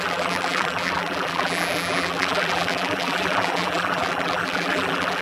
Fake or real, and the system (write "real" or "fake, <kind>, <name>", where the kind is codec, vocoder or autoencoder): fake, vocoder, BigVGAN v2